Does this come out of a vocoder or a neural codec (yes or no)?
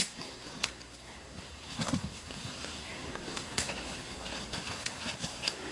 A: yes